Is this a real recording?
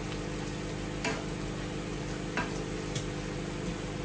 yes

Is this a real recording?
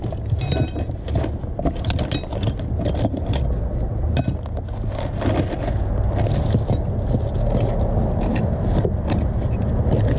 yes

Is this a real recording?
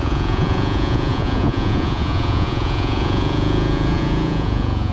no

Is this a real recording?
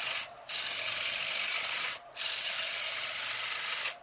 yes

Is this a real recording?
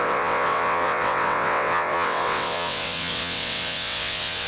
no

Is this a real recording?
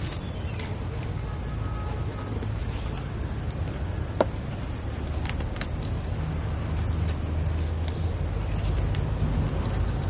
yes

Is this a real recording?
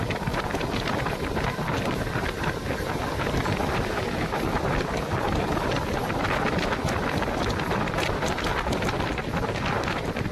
yes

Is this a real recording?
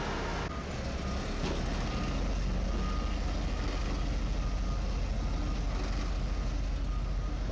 yes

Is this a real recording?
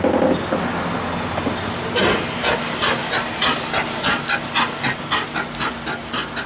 yes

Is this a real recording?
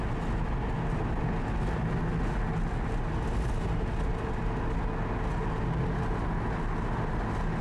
yes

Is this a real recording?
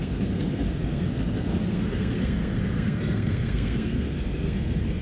no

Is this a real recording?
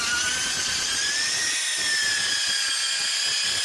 yes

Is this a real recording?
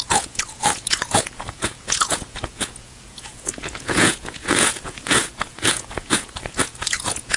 no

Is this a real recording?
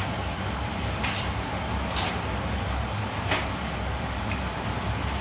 yes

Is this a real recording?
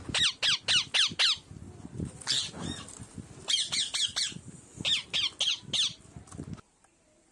yes